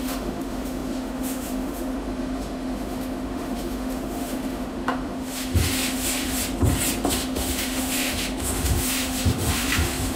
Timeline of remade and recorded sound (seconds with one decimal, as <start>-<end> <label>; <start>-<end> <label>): 0.0-6.4 remade; 6.4-7.1 recorded; 7.1-10.2 remade